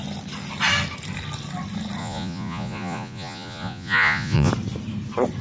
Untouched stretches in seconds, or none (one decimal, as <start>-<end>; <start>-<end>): 0.0-2.0; 4.5-5.4

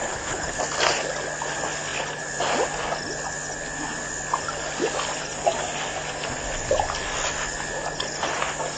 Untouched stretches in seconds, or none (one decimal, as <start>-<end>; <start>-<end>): 0.6-8.8

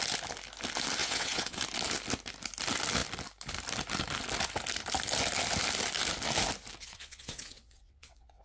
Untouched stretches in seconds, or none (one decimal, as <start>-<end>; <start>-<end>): 0.0-1.0; 1.6-6.8